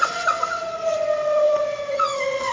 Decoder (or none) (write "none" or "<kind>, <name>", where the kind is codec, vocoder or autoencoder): vocoder, WaveNeXt